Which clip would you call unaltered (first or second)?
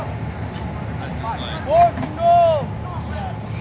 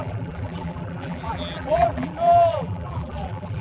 first